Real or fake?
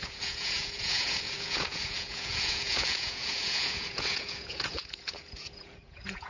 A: fake